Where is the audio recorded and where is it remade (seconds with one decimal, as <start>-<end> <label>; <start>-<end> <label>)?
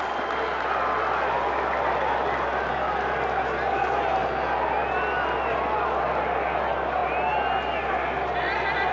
0.0-8.9 recorded